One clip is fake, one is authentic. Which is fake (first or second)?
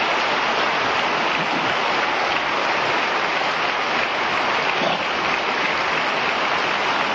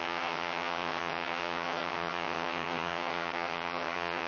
second